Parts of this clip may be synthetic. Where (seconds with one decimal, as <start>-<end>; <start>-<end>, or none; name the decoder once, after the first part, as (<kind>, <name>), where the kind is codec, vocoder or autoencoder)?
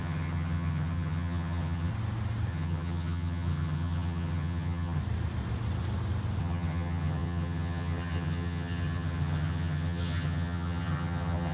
0.0-1.9 (vocoder, HiFi-GAN); 2.5-5.0; 6.4-11.5